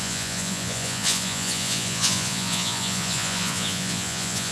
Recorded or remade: remade